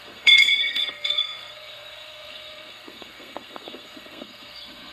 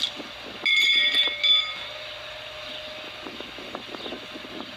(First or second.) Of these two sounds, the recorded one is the second